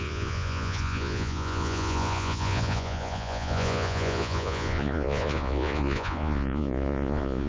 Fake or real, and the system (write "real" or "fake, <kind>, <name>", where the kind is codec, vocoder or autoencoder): fake, vocoder, Vocos